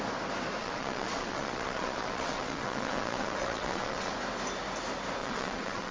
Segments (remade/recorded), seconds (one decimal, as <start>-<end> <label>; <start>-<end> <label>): 0.0-0.6 recorded; 0.6-4.1 remade; 4.1-5.2 recorded; 5.2-5.9 remade